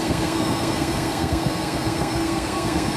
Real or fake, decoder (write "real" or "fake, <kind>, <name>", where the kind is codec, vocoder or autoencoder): fake, codec, SNAC